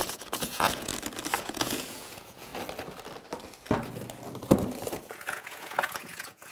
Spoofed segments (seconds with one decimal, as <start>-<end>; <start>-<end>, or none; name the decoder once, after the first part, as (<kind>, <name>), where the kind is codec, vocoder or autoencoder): 0.0-0.9 (vocoder, Vocos); 1.4-2.5; 5.0-6.5